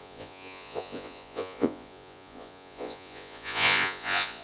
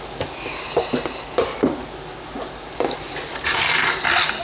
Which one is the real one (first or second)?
second